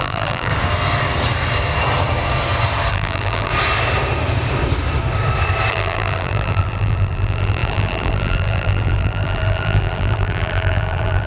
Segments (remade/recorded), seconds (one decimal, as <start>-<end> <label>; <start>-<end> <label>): 0.0-0.5 remade; 0.5-2.9 recorded; 2.9-3.5 remade; 3.5-5.7 recorded; 5.7-11.3 remade